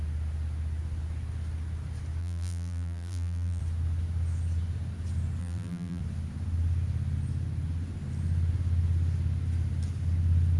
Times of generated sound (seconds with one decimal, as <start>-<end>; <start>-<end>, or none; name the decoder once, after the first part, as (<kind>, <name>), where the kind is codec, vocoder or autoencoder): 2.2-3.6 (vocoder, BigVGAN v2); 5.4-6.0